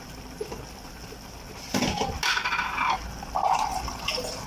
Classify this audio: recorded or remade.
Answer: recorded